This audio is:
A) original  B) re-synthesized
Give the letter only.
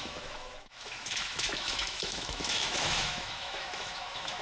B